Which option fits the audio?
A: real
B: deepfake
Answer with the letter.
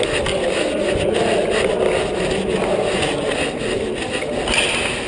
A